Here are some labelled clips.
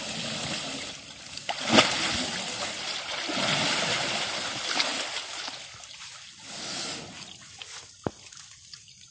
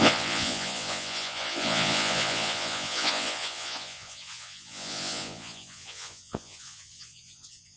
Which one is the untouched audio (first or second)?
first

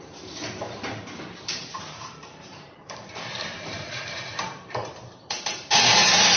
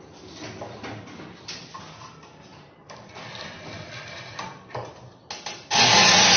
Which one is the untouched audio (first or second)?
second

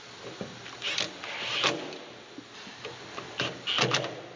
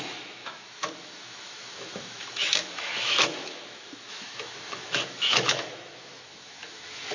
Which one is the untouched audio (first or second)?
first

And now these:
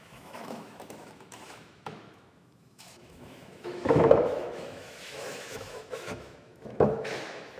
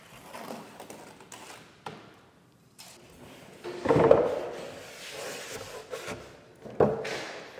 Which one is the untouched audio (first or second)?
second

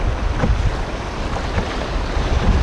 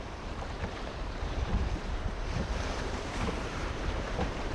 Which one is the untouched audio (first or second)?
first